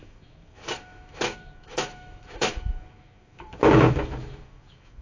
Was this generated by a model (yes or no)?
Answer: yes